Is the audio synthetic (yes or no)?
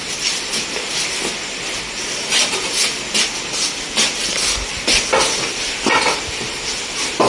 no